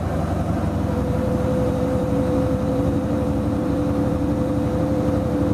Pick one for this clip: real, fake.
fake